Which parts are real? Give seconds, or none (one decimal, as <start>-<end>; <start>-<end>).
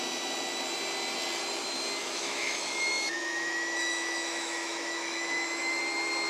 0.0-2.0; 5.8-6.3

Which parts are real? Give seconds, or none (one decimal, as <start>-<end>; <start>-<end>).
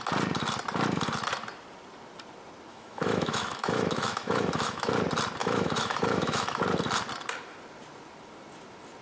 0.0-2.7; 4.9-5.4; 6.6-9.0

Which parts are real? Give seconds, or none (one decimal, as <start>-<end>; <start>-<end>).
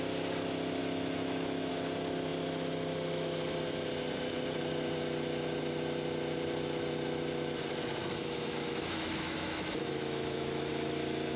0.0-0.8; 1.7-8.0; 10.7-11.4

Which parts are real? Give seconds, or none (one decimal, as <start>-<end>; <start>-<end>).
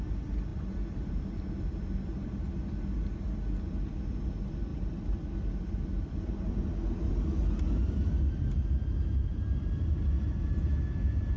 0.0-11.4